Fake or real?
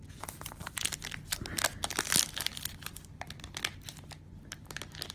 real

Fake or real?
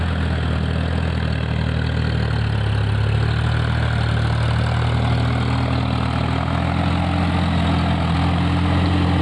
real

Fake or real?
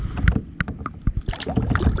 real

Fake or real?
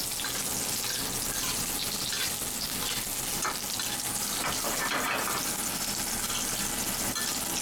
real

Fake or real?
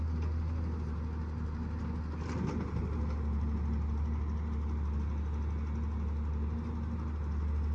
real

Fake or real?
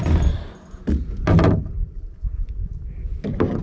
real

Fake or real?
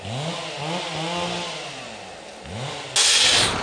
real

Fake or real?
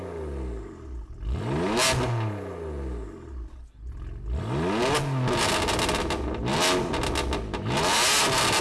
real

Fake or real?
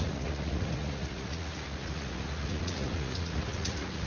fake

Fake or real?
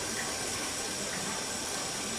real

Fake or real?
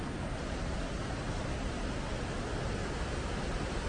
real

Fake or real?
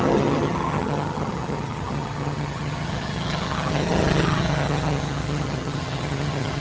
fake